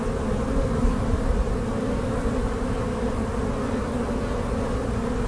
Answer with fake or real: real